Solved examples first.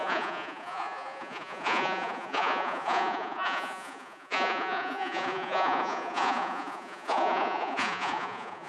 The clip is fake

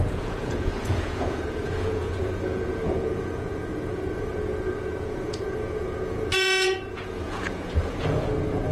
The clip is fake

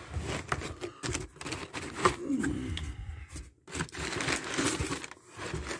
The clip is real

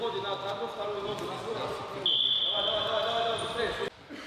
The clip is real